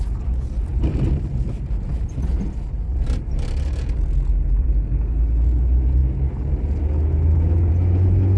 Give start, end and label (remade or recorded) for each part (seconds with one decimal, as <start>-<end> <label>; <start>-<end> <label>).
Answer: 0.0-0.7 recorded; 0.7-1.3 remade; 1.3-1.9 recorded; 1.9-5.1 remade; 5.1-8.4 recorded